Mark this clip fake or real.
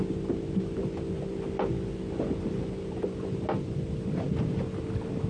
real